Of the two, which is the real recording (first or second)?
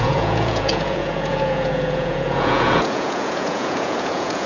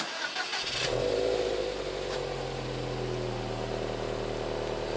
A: second